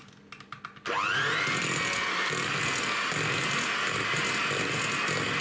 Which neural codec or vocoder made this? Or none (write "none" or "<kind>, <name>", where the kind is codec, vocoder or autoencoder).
none